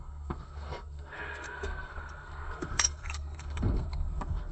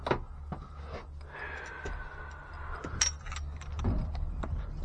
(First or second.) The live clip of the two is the second